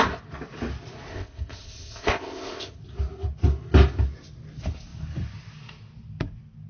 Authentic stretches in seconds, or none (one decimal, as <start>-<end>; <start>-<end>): 0.0-1.1; 2.8-6.7